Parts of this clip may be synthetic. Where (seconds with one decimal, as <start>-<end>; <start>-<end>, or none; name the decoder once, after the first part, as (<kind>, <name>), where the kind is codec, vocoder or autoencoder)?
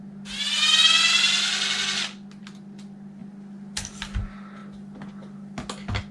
none